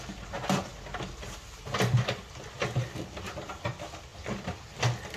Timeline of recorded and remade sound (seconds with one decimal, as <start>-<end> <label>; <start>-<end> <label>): 0.0-5.2 recorded